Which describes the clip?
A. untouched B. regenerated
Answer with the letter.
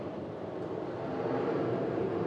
A